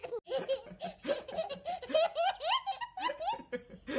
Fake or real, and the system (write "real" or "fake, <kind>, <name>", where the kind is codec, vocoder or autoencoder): real